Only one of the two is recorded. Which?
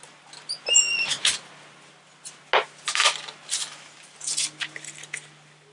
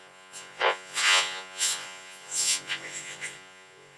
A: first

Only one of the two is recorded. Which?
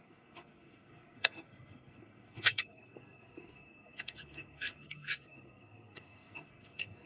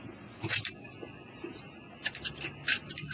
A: second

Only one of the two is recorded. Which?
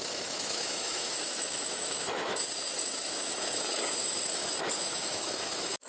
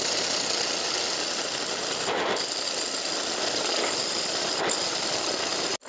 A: second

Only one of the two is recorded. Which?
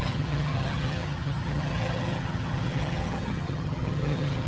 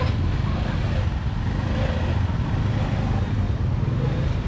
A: second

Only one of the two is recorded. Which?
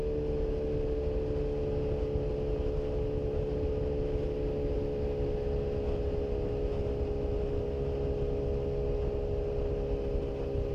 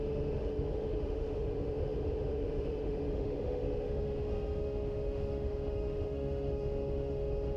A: first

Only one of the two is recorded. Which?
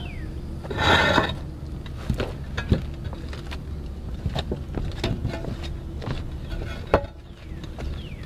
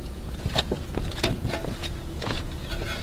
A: first